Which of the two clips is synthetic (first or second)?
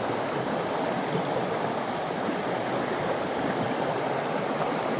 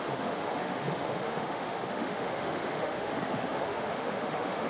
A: second